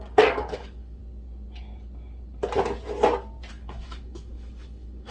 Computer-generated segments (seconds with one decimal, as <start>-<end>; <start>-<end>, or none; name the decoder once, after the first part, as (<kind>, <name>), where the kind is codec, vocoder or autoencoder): 0.0-1.0 (codec, DAC); 3.5-5.1

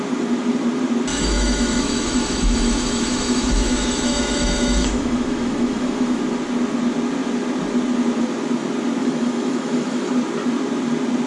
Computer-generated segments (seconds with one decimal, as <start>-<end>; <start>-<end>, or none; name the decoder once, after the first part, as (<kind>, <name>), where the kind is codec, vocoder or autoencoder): 1.1-6.2 (autoencoder, DAC-VAE); 9.0-10.1

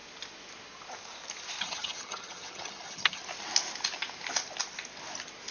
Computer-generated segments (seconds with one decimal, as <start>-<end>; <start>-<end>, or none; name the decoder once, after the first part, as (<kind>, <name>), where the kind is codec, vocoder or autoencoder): 1.6-3.2 (vocoder, HiFi-GAN)

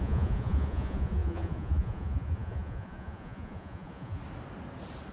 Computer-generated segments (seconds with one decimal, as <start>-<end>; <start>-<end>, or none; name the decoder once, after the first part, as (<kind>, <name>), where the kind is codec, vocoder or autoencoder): 0.0-4.2 (vocoder, Vocos)

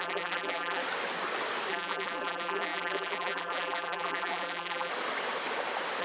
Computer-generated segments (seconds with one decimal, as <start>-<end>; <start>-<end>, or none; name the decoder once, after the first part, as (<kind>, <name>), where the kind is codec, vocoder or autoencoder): 0.0-0.8 (vocoder, BigVGAN v2); 1.7-4.9

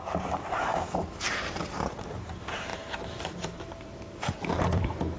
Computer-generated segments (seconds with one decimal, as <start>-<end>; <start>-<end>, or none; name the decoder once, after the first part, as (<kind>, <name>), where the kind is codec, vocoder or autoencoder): 0.0-0.7 (vocoder, BigVGAN v2); 1.2-5.2

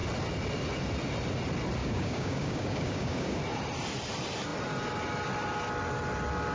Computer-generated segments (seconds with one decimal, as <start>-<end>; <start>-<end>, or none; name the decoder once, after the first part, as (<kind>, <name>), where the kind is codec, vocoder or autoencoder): 1.8-3.4 (codec, DAC)